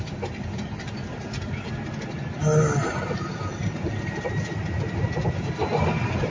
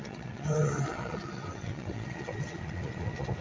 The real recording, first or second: first